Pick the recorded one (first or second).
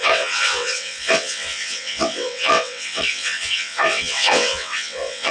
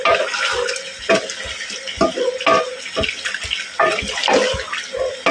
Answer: second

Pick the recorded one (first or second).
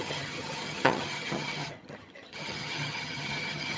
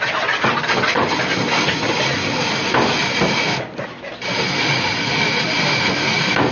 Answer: second